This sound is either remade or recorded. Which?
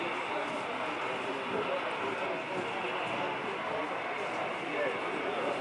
recorded